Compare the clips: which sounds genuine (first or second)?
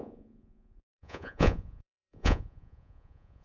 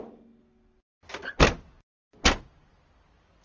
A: second